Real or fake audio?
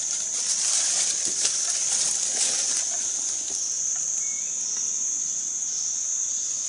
real